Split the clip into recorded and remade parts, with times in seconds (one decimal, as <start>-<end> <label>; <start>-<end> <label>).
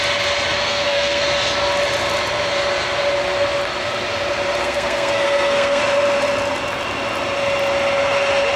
0.0-0.6 recorded; 0.6-1.2 remade; 1.2-4.6 recorded; 4.6-5.8 remade; 5.8-8.6 recorded